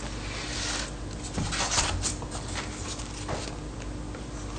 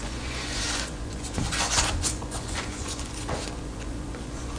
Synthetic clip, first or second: second